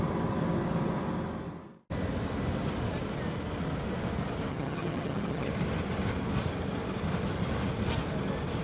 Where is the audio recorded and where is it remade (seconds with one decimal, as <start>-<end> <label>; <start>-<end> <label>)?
0.0-4.5 recorded; 4.5-5.5 remade; 5.5-8.6 recorded